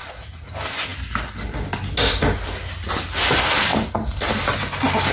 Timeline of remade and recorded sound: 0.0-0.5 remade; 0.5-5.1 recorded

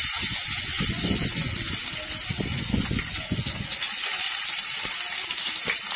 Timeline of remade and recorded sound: 0.0-1.5 remade; 1.5-2.5 recorded; 2.5-4.2 remade; 4.2-6.0 recorded

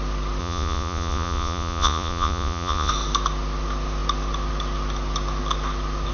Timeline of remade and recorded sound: 0.0-0.4 recorded; 0.4-2.9 remade; 2.9-6.1 recorded